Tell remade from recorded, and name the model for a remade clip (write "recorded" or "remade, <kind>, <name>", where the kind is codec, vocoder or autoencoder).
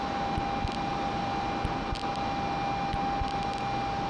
recorded